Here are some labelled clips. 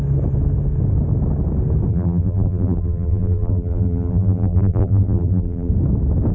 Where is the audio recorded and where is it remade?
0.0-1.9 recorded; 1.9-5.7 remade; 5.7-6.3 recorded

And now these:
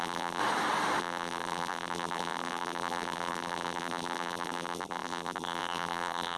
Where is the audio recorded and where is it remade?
0.0-0.4 remade; 0.4-1.0 recorded; 1.0-6.4 remade

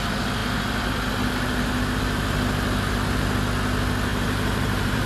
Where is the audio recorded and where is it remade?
0.0-4.1 recorded; 4.1-5.1 remade

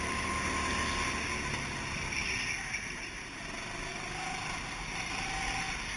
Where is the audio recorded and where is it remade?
0.0-6.0 recorded

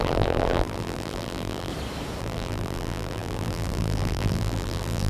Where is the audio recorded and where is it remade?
0.0-1.7 remade; 1.7-2.2 recorded; 2.2-5.1 remade

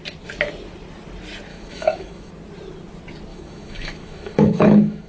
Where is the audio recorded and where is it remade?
0.0-1.5 recorded; 1.5-2.3 remade; 2.3-3.3 recorded; 3.3-5.1 remade

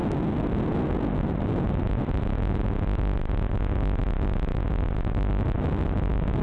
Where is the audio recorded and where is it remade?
0.0-6.4 recorded